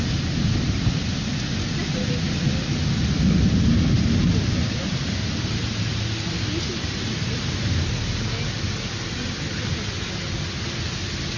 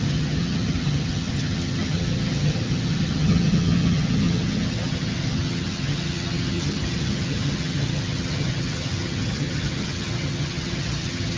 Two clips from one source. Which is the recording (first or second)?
first